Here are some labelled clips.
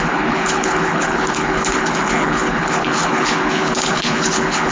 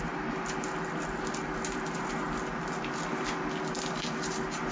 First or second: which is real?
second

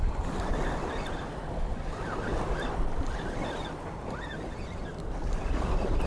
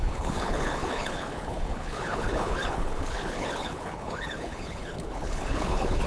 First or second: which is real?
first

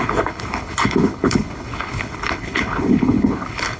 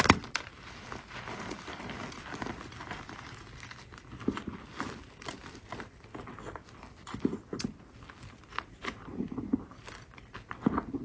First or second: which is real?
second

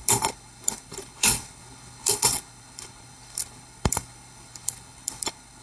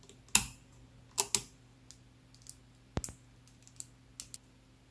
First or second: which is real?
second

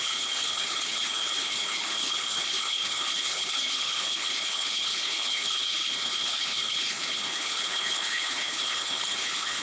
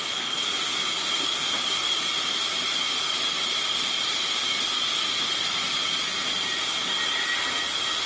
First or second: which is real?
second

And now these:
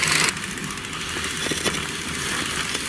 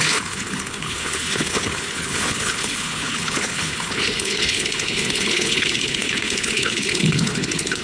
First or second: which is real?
first